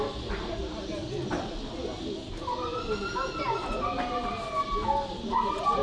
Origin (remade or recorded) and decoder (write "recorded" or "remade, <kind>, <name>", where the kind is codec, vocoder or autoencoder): recorded